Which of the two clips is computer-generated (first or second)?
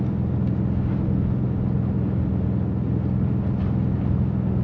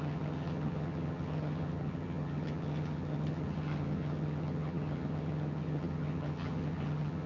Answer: second